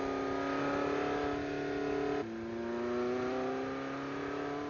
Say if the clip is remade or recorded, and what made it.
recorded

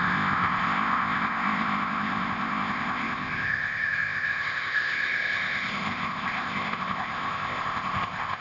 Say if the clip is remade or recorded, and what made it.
remade, codec, ZipCodec